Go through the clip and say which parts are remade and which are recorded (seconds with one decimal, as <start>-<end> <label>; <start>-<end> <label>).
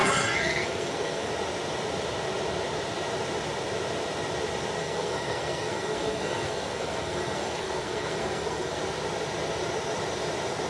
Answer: 0.0-1.3 remade; 1.3-4.8 recorded; 4.8-8.8 remade; 8.8-10.7 recorded